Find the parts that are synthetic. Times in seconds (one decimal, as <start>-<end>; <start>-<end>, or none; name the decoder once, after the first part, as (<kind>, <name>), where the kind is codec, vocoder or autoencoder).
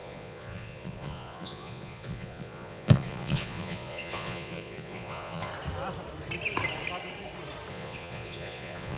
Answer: 0.0-5.5 (vocoder, Vocos); 7.7-9.0